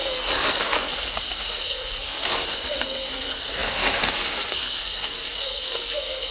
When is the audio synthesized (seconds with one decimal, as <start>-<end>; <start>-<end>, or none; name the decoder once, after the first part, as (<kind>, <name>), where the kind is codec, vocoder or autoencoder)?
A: 0.0-6.3 (codec, SNAC)